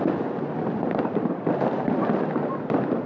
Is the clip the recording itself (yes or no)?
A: no